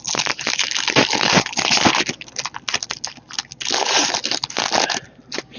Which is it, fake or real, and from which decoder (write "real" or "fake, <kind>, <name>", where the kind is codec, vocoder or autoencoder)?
real